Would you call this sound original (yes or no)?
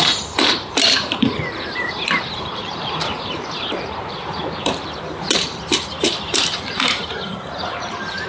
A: no